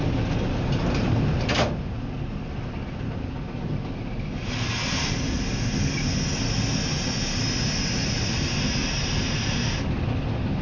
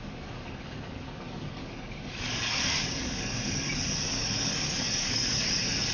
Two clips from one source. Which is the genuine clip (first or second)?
first